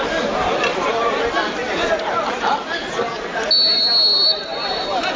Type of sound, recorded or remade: recorded